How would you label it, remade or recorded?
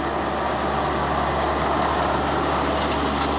recorded